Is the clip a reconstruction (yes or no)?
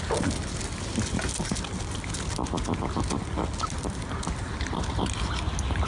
no